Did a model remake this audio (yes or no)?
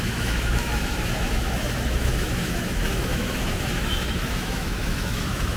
yes